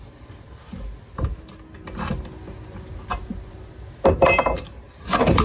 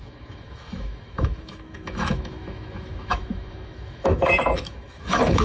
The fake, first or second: second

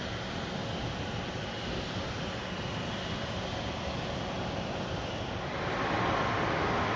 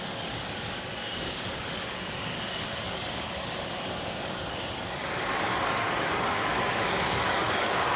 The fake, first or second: second